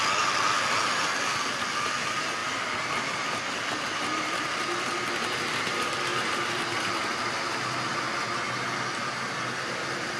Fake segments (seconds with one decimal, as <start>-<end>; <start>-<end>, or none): none